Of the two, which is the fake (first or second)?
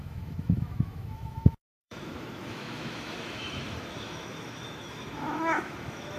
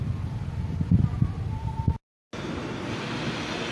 first